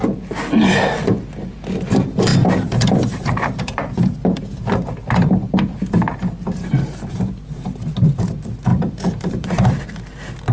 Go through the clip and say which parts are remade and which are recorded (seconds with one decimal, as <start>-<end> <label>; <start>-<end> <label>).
0.0-2.3 recorded; 2.3-4.4 remade; 4.4-8.7 recorded; 8.7-9.8 remade; 9.8-10.5 recorded